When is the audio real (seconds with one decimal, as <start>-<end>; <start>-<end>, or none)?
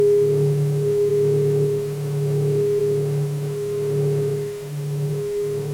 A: none